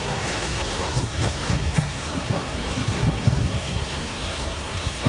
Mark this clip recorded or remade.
remade